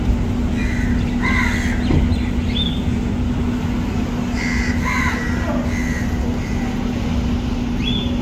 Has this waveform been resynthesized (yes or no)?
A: no